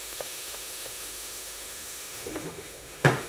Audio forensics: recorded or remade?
remade